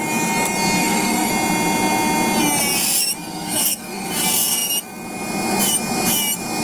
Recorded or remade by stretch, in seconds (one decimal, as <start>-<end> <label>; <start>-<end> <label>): 0.0-0.8 recorded; 0.8-1.3 remade; 1.3-3.2 recorded; 3.2-4.1 remade; 4.1-6.6 recorded